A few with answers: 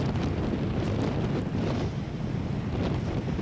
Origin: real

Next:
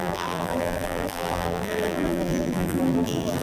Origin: fake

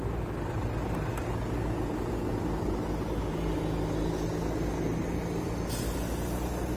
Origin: real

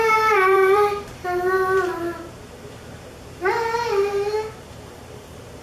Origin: fake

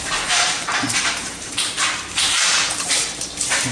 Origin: fake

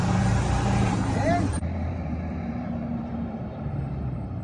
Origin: fake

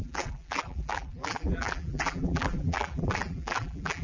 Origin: fake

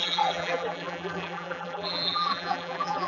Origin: fake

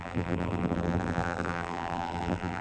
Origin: fake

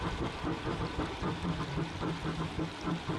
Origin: real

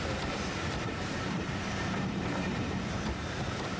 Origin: fake